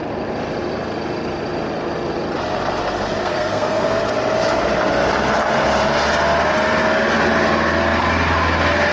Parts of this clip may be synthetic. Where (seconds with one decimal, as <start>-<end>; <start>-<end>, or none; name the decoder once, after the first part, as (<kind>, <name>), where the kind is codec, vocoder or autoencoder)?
3.2-4.0 (codec, SNAC)